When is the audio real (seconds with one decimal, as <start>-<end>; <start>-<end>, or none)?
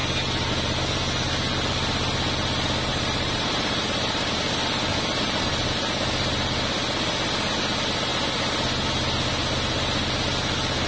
0.0-2.9; 4.3-4.9; 5.7-10.9